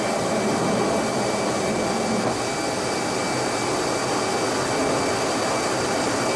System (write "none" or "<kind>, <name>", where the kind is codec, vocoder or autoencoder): none